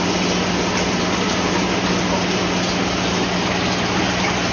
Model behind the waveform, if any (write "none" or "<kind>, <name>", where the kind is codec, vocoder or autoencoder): none